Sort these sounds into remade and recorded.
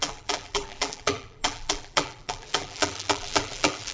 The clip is remade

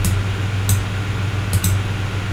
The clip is recorded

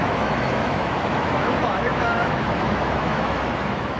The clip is remade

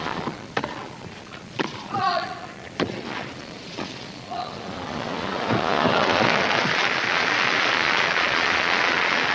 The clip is remade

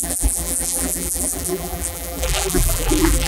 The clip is remade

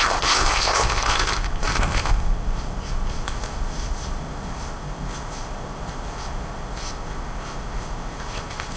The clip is remade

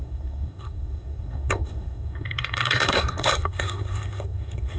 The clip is remade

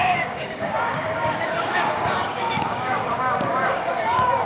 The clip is remade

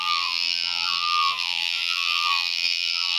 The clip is remade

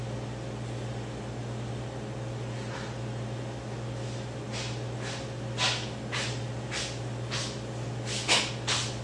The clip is recorded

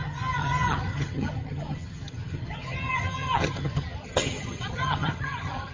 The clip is remade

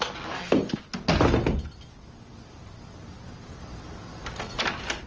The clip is recorded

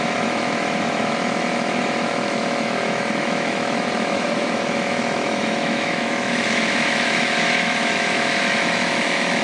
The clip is remade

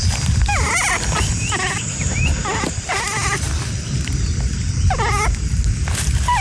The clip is remade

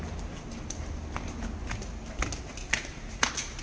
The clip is recorded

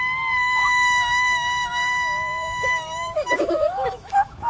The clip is remade